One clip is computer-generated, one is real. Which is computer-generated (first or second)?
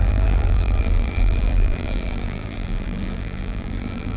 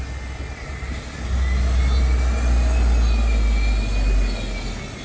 first